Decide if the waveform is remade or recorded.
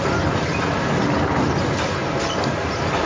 recorded